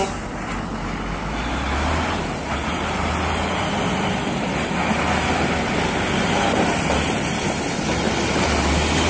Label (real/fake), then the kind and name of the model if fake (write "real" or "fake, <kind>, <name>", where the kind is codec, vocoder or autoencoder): real